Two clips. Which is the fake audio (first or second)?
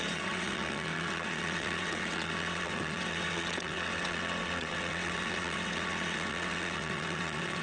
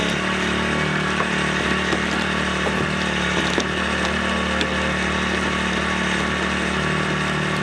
first